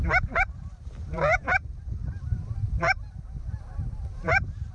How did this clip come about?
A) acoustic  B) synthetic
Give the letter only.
B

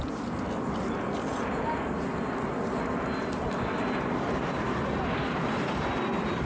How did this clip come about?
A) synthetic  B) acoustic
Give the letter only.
B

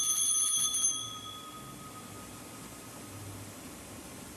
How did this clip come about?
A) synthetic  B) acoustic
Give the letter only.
B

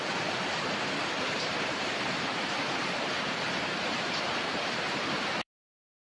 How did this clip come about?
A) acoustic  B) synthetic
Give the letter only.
B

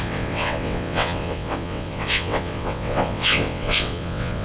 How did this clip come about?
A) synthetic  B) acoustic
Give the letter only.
A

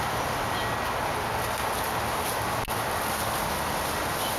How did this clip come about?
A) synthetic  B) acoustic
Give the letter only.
B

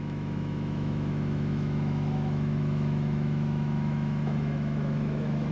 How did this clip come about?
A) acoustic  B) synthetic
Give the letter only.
B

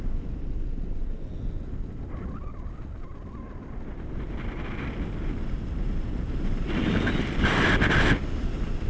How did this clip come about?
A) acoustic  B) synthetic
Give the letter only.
A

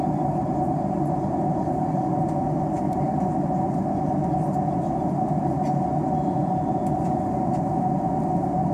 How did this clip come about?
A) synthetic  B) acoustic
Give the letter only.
B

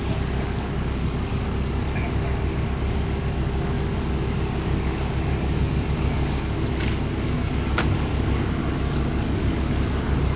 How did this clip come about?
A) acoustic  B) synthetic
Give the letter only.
B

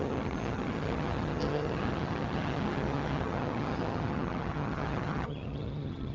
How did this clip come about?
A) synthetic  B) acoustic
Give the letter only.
A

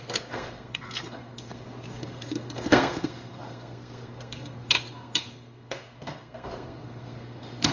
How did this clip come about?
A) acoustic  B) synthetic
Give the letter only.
B